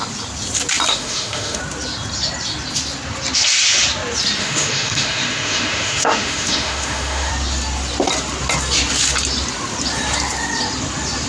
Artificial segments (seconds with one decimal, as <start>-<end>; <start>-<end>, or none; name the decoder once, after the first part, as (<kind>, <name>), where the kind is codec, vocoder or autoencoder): 0.9-1.6 (autoencoder, DAC-VAE); 4.4-7.3